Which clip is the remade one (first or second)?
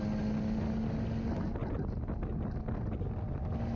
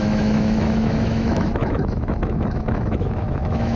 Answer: second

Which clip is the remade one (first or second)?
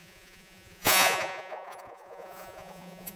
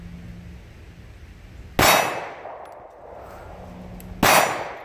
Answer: first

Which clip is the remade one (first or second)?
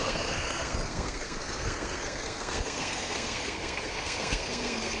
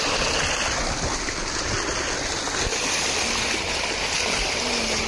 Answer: first